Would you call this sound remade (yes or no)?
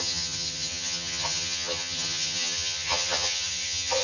yes